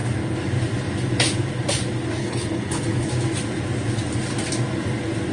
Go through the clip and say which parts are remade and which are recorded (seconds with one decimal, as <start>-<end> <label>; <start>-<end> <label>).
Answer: 0.0-2.2 recorded; 2.2-3.1 remade; 3.1-5.3 recorded